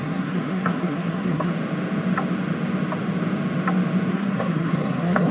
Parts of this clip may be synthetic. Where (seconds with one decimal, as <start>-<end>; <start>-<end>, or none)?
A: 0.0-1.5; 4.1-5.3